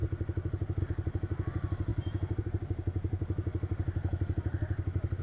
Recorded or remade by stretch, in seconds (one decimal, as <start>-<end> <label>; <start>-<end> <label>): 0.0-5.2 recorded